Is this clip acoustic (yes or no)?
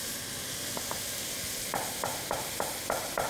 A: yes